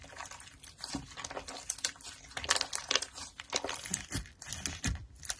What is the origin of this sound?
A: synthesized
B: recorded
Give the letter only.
B